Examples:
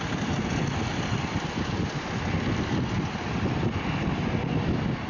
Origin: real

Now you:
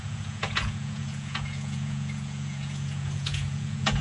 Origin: fake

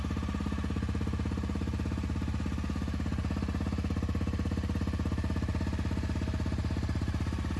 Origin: real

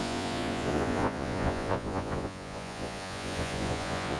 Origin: fake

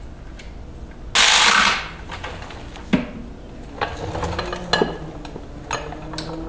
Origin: real